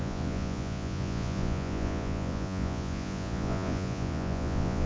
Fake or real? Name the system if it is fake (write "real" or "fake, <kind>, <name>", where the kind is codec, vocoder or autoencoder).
fake, vocoder, Vocos